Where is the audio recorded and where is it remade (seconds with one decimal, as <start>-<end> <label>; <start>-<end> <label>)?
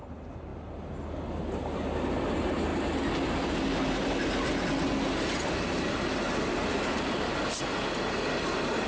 0.0-8.9 recorded